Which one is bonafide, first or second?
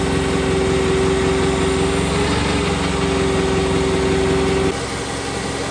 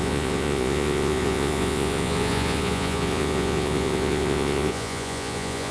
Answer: first